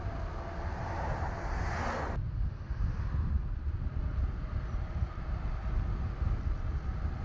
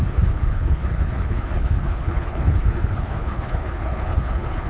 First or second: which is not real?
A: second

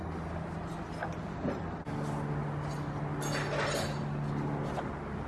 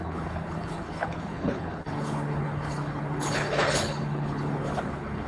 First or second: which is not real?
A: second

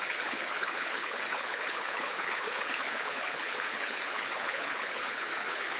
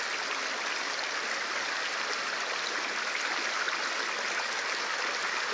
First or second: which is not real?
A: first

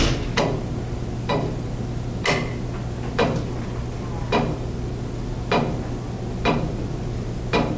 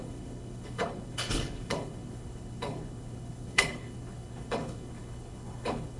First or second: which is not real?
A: second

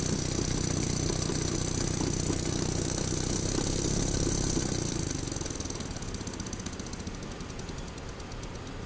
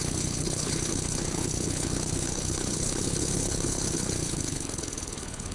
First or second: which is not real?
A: second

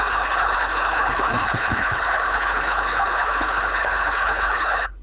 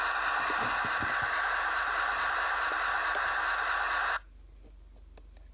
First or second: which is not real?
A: first